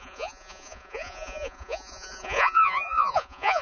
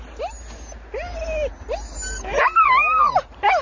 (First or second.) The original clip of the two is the second